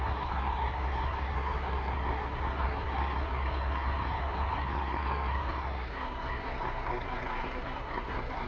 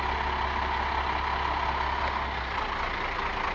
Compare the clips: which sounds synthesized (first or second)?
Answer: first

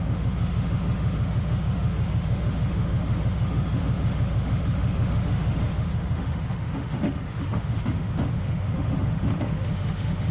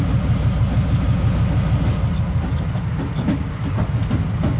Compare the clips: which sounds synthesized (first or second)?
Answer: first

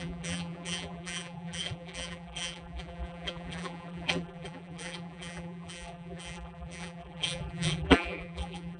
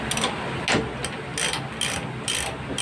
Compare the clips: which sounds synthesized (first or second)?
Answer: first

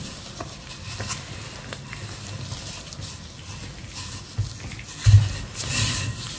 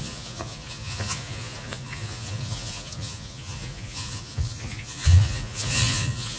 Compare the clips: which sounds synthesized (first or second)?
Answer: second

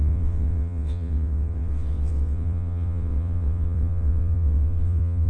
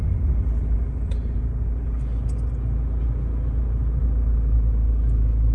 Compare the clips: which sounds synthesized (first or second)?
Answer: first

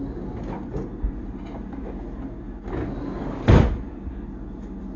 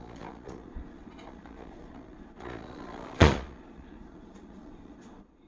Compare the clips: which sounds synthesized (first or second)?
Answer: second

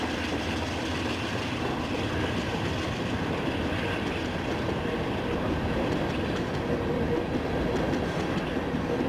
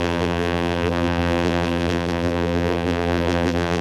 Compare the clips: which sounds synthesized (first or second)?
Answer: second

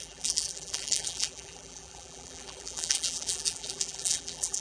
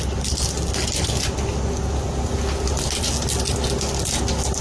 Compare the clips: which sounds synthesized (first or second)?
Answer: first